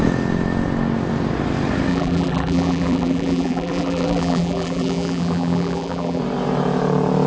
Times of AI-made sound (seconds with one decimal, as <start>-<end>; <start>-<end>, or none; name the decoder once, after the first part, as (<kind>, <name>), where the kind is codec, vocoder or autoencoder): 1.9-6.2 (vocoder, BigVGAN v2)